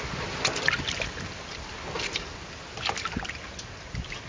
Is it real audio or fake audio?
real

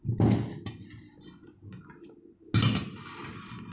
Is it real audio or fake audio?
real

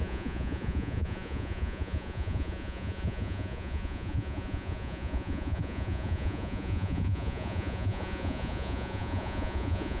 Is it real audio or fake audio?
fake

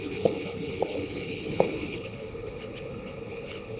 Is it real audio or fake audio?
fake